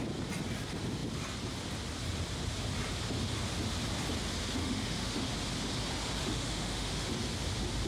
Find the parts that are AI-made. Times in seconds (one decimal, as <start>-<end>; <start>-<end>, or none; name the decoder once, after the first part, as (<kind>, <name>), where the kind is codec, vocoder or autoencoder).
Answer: 4.6-5.2 (autoencoder, DAC-VAE); 6.2-7.1